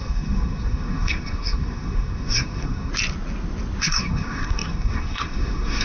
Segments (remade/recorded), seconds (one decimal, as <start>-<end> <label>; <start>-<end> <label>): 0.0-2.9 remade; 2.9-3.8 recorded; 3.8-5.8 remade